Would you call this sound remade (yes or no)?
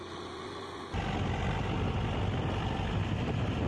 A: no